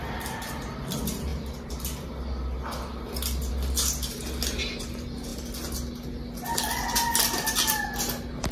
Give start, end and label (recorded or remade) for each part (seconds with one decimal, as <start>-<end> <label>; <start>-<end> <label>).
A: 0.0-8.5 recorded